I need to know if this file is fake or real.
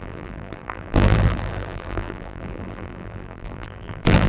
fake